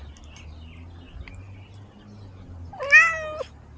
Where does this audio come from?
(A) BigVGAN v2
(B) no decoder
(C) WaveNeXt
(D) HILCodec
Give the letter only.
B